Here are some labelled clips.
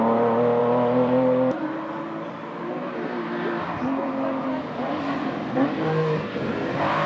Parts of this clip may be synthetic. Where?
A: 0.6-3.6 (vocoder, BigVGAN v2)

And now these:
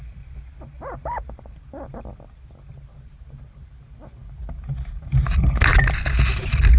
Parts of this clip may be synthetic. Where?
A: none

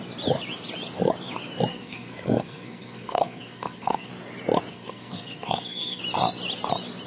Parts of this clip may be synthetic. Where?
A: 1.7-4.1 (codec, SNAC); 4.7-6.0

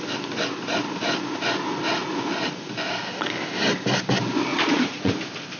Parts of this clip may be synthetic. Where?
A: 4.5-5.1 (vocoder, Vocos)

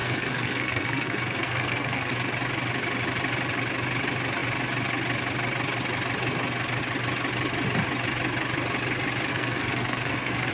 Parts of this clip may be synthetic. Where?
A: 0.0-2.1 (codec, SNAC); 9.3-10.5

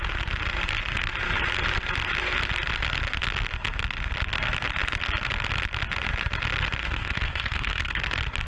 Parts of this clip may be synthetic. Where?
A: 6.8-8.0 (codec, SNAC)

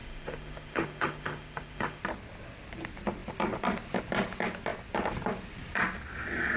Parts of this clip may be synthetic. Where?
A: 0.0-2.0 (autoencoder, DAC-VAE)